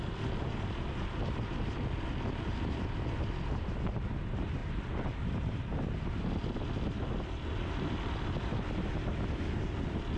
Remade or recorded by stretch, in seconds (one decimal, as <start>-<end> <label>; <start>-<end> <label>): 0.0-4.6 recorded; 4.6-6.3 remade; 6.3-10.2 recorded